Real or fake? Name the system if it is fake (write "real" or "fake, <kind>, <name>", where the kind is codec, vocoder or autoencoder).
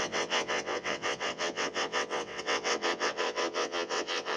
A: fake, vocoder, WaveNeXt